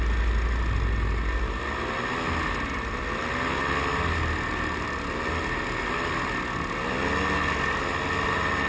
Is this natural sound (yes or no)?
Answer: yes